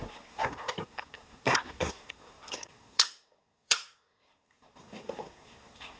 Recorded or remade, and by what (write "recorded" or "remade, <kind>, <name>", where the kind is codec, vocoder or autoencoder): remade, codec, SNAC